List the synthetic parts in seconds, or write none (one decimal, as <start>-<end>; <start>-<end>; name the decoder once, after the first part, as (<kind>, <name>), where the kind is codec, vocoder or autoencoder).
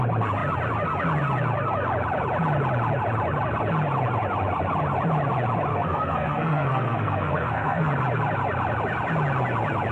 5.7-7.9 (codec, SNAC)